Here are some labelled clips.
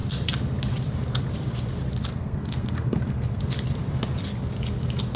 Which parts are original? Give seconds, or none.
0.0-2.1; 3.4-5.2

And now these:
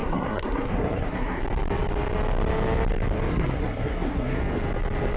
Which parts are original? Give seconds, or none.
1.4-3.3; 4.4-5.2

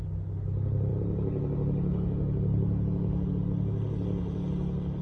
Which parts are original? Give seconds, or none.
0.0-5.0